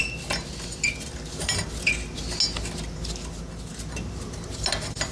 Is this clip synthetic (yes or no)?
no